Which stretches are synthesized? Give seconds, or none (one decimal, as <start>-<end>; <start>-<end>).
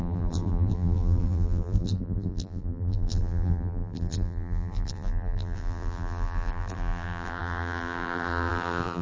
0.0-9.0